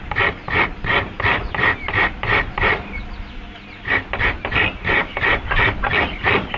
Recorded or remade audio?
recorded